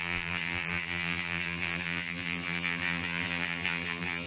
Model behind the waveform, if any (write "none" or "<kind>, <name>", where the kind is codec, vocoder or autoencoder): vocoder, BigVGAN v2